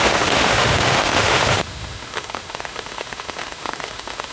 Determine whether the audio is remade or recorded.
remade